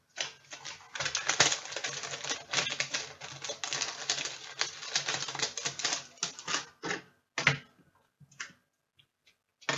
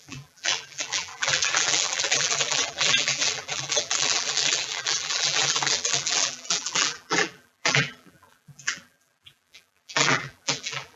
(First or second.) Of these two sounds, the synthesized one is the second